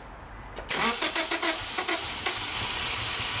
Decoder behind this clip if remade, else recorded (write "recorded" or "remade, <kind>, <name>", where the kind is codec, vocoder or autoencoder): recorded